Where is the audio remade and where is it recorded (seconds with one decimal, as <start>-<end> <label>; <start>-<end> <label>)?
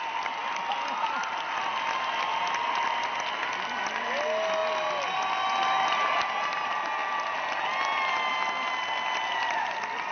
0.0-10.1 recorded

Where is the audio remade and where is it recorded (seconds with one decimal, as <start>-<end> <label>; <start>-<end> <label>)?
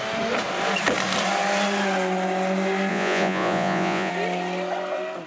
0.0-2.9 recorded; 2.9-4.1 remade; 4.1-5.3 recorded